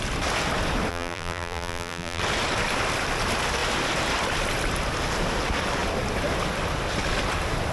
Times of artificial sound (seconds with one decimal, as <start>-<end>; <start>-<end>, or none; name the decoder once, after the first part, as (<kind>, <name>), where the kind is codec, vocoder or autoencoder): 0.9-2.2 (vocoder, BigVGAN v2)